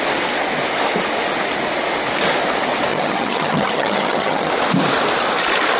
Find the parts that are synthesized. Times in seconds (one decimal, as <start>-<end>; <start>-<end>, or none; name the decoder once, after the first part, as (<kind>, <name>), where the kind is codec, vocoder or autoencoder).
2.9-4.5 (vocoder, HiFi-GAN)